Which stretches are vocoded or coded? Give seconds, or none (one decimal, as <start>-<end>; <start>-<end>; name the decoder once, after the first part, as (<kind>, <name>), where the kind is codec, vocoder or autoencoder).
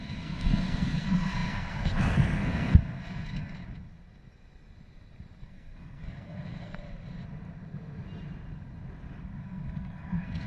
0.0-3.6 (codec, SNAC); 5.4-6.8; 9.4-10.5